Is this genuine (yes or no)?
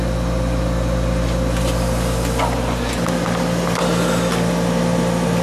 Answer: yes